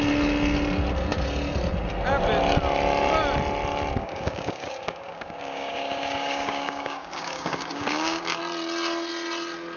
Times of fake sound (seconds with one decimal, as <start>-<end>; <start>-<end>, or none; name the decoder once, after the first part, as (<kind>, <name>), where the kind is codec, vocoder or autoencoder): 4.0-8.4 (codec, DAC)